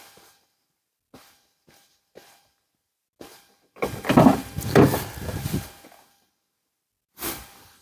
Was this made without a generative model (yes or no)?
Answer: yes